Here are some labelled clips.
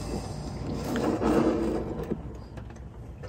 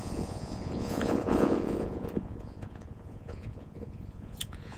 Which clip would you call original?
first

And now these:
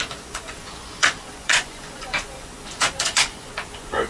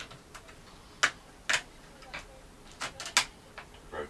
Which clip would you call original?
second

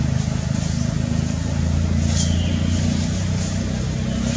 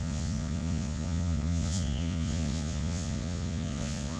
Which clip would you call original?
first